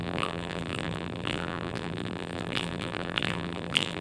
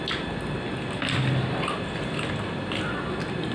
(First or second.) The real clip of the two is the second